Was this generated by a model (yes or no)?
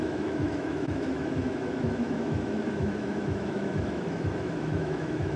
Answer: yes